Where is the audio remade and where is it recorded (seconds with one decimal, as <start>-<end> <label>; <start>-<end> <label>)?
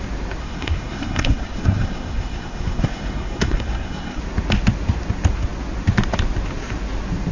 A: 0.0-0.4 recorded; 0.4-4.2 remade; 4.2-7.3 recorded